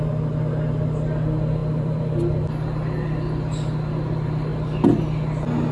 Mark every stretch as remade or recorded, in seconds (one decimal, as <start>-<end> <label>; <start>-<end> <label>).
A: 0.0-1.6 recorded; 1.6-2.3 remade; 2.3-5.7 recorded